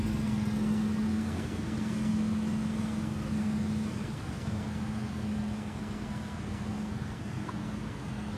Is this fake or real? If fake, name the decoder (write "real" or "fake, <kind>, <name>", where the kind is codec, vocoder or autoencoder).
fake, codec, SNAC